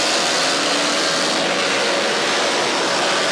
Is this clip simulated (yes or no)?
no